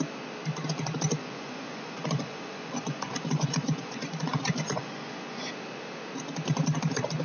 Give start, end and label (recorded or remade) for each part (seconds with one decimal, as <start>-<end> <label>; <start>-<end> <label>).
0.0-1.2 recorded; 1.2-5.5 remade; 5.5-7.2 recorded